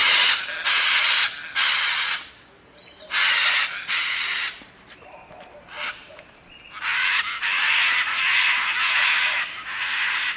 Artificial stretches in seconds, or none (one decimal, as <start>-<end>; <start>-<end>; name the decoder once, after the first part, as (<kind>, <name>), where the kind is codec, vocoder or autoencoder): none